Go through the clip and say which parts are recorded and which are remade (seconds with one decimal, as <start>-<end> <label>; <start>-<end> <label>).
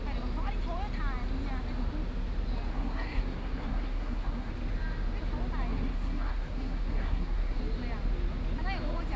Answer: 0.0-2.7 recorded; 2.7-4.5 remade; 4.5-5.7 recorded; 5.7-7.6 remade; 7.6-9.2 recorded